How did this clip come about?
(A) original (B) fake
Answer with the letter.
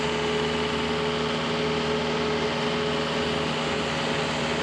A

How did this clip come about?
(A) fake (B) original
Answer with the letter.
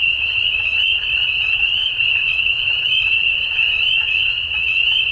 A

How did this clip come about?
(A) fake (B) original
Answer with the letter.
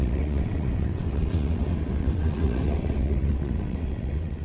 A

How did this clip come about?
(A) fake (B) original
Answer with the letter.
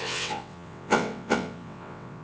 A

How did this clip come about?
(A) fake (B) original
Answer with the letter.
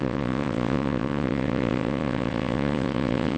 A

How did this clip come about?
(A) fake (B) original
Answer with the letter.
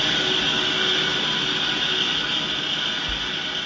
B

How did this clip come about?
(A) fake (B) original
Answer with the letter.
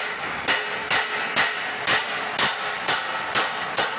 B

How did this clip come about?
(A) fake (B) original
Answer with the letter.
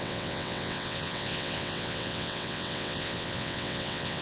A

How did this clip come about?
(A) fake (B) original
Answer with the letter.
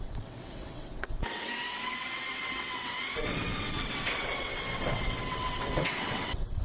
A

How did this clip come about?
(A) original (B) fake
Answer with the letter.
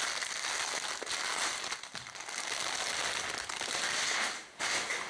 A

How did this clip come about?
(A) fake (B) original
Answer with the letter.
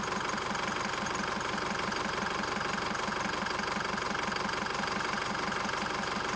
B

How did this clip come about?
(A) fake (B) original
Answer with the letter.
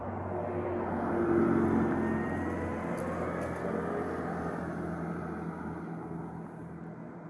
B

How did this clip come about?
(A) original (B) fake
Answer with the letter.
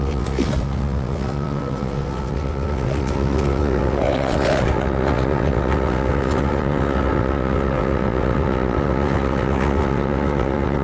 B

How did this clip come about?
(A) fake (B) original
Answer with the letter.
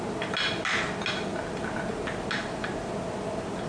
B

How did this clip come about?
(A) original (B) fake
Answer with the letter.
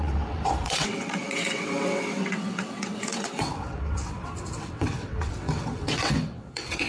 B